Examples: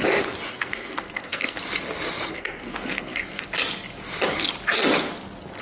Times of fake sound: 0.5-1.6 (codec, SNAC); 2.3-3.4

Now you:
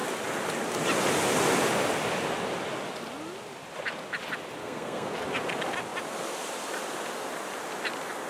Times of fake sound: 4.6-5.1 (codec, SNAC)

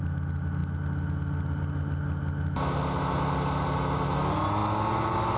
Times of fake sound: none

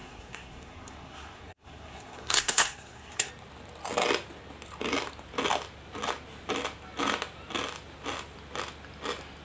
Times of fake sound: 0.0-3.3 (codec, SNAC)

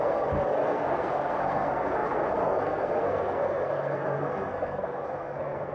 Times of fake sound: 0.0-5.7 (codec, SNAC)